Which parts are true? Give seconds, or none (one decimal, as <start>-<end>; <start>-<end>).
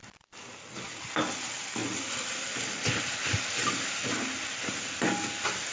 0.0-5.7